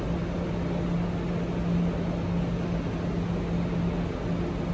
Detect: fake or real real